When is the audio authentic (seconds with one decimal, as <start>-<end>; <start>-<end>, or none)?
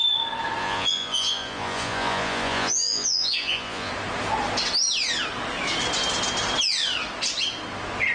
0.0-0.6; 3.9-8.1